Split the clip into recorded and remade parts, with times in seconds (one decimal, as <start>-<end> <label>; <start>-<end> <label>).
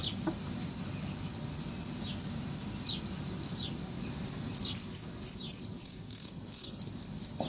0.0-5.8 recorded; 5.8-6.8 remade; 6.8-7.5 recorded